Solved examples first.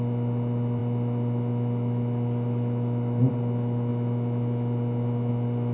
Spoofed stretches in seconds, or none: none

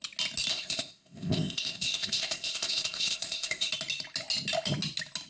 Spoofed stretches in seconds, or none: 0.5-3.7 (codec, ZipCodec)

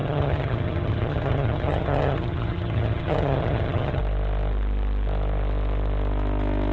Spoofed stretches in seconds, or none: 0.0-4.0 (vocoder, HiFi-GAN)

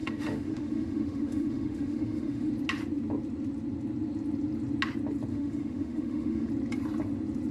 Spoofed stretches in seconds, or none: 0.0-2.5 (autoencoder, DAC-VAE); 5.3-6.5

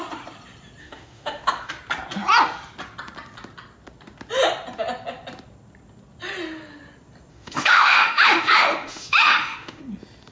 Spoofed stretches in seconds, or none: 0.8-1.7 (autoencoder, DAC-VAE); 7.3-9.8

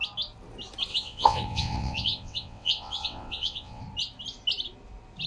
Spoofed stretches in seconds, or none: 0.9-3.8 (vocoder, WaveNeXt)

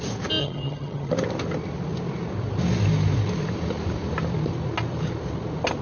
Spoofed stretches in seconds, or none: 0.4-1.1 (vocoder, HiFi-GAN)

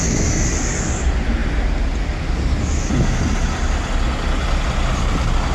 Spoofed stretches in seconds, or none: none